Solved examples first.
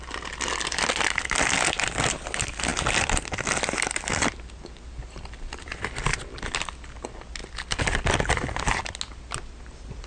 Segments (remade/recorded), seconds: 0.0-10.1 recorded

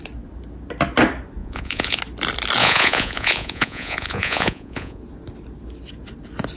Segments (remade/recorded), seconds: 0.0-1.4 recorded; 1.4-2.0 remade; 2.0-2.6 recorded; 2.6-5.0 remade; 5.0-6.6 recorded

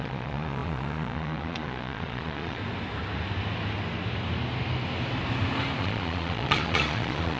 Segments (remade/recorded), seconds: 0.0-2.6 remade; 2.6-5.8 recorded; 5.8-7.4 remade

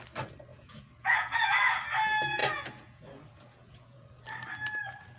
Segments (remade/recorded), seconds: 0.0-0.5 recorded; 0.5-1.6 remade; 1.6-2.4 recorded; 2.4-4.2 remade; 4.2-5.2 recorded

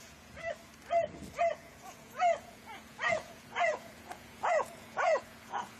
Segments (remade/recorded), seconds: 0.0-0.4 remade; 0.4-1.3 recorded; 1.3-5.8 remade

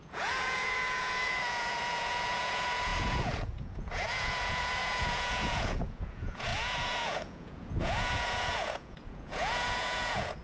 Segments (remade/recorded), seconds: 0.0-10.4 remade